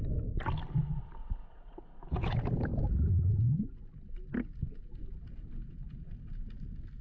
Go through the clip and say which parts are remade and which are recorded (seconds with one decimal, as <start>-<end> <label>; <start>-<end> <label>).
0.0-1.2 recorded; 1.2-1.8 remade; 1.8-7.0 recorded